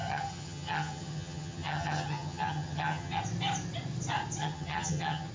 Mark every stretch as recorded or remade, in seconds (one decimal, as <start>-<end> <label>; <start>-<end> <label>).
0.0-3.2 remade; 3.2-4.4 recorded; 4.4-5.3 remade